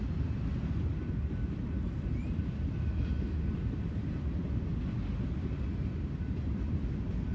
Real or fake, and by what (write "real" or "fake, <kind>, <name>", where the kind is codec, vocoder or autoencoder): real